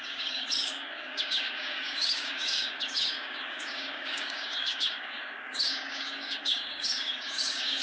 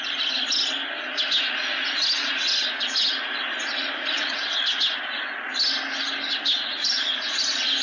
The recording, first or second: second